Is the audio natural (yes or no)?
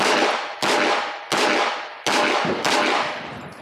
yes